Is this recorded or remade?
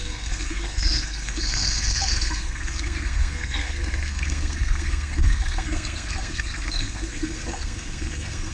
remade